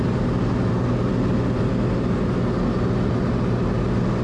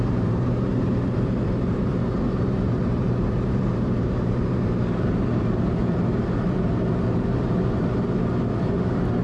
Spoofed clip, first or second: second